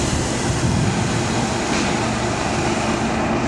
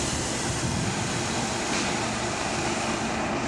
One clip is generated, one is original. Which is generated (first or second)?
second